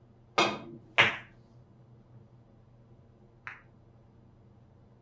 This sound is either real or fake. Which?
real